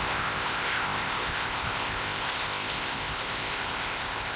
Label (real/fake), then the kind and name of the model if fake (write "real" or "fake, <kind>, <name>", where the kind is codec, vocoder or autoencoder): fake, codec, ZipCodec